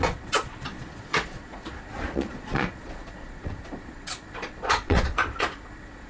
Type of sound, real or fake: fake